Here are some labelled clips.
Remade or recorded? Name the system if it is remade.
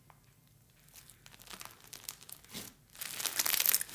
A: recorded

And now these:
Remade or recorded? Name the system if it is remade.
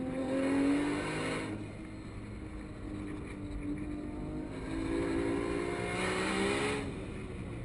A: recorded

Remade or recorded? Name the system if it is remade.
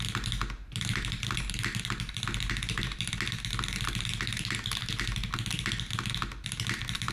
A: recorded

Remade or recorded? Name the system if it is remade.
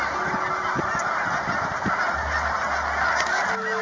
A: recorded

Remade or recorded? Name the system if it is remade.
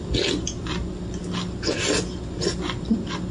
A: recorded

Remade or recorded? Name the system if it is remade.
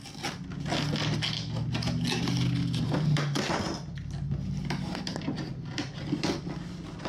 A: recorded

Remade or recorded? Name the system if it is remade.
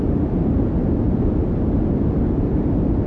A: recorded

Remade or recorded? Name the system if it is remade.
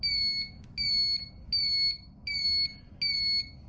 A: recorded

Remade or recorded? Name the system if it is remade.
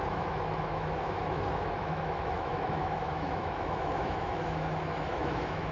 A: remade, autoencoder, DAC-VAE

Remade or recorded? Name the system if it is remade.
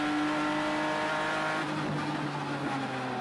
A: recorded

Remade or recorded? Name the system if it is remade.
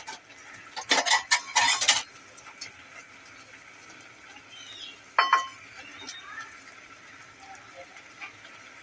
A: recorded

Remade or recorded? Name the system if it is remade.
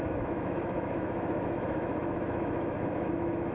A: remade, autoencoder, DAC-VAE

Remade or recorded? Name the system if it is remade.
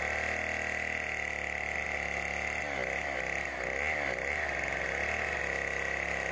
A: recorded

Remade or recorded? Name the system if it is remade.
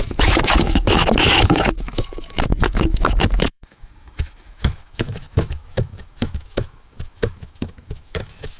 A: remade, autoencoder, DAC-VAE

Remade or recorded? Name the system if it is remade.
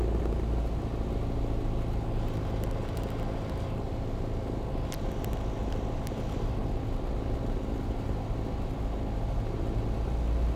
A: recorded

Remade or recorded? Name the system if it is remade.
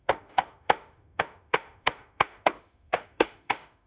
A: remade, autoencoder, DAC-VAE